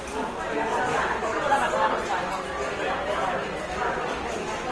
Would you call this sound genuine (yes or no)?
yes